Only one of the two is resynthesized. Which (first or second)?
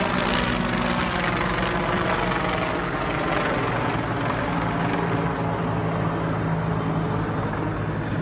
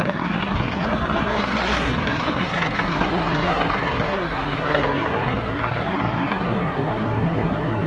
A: second